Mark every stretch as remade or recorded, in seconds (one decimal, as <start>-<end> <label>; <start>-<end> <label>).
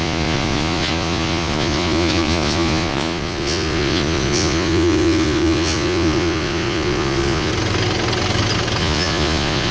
0.0-7.5 remade; 7.5-8.8 recorded; 8.8-9.7 remade